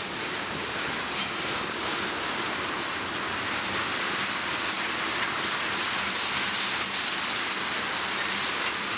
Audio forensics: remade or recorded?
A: recorded